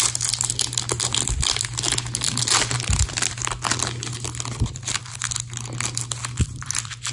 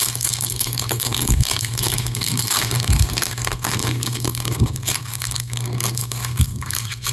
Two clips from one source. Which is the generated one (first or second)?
second